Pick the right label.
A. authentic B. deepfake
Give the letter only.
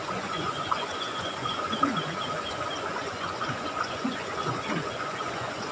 B